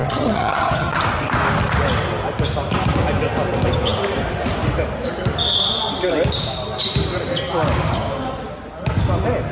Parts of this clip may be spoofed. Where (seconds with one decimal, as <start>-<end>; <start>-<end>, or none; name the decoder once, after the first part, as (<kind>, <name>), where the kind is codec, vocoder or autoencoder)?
0.0-1.0 (vocoder, HiFi-GAN)